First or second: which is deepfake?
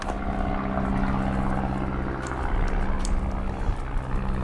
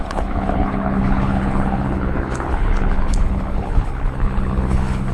second